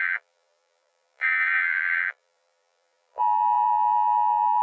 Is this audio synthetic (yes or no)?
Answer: yes